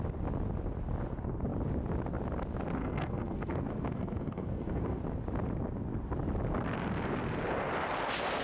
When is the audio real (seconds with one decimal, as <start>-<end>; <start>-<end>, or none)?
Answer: 0.0-2.8; 5.0-8.4